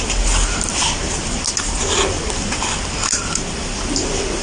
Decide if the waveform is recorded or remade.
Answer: recorded